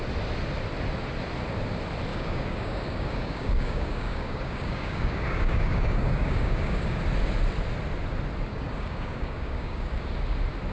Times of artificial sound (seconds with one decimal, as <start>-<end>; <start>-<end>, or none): 2.1-7.0; 8.5-10.0